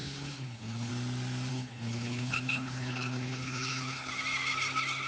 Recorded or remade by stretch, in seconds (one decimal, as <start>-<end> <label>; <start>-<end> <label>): 0.0-0.9 remade; 0.9-1.5 recorded; 1.5-4.1 remade; 4.1-5.1 recorded